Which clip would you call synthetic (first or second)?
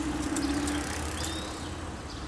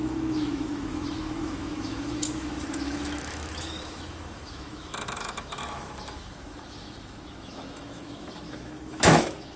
second